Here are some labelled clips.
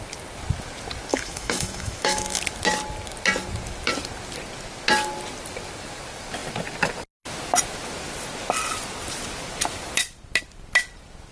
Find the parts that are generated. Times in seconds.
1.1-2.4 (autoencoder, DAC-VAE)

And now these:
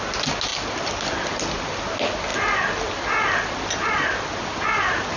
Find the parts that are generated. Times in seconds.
none

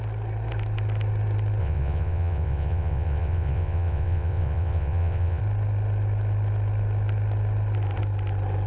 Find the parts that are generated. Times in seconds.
1.6-5.4 (vocoder, WaveNeXt)

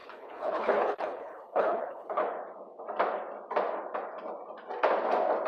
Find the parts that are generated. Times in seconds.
0.0-2.2 (codec, HILCodec)

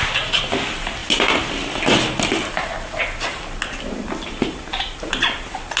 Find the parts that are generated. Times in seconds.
none

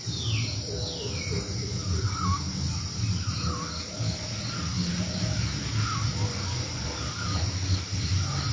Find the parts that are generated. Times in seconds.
6.3-6.9 (vocoder, Vocos)

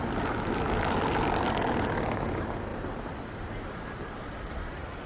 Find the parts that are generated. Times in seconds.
none

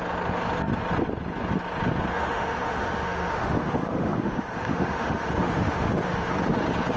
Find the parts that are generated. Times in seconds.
2.1-6.3 (autoencoder, DAC-VAE)